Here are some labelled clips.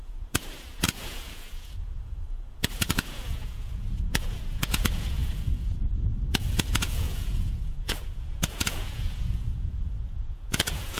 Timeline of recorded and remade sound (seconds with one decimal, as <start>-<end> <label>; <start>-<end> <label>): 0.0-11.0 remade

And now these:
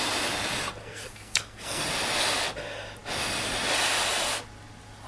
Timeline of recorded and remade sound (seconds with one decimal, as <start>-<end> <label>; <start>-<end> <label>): 0.0-0.8 recorded; 0.8-1.8 remade; 1.8-5.1 recorded

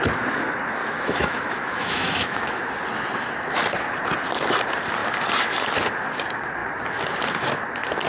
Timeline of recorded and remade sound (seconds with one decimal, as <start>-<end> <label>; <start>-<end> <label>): 0.0-0.8 recorded; 0.8-2.7 remade; 2.7-8.1 recorded